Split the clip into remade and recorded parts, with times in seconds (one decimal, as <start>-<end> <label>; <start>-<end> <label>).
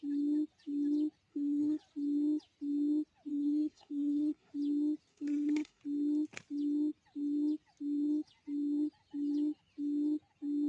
0.0-1.3 recorded; 1.3-1.8 remade; 1.8-3.3 recorded; 3.3-4.5 remade; 4.5-5.1 recorded; 5.1-5.8 remade; 5.8-10.7 recorded